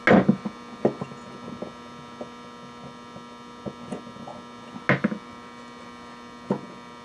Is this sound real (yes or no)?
yes